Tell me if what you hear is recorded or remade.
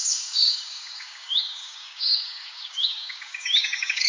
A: remade